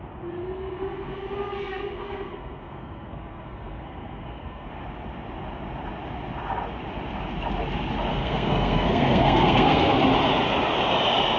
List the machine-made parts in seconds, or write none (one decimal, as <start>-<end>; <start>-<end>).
0.4-4.7; 8.1-9.9

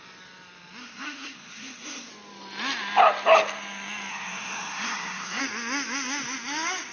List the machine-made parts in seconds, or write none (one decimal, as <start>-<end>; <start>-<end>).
0.8-2.1; 4.1-5.4